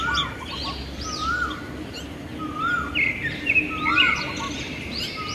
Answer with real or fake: real